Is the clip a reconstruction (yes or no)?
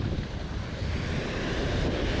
no